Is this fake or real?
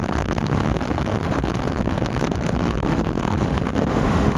fake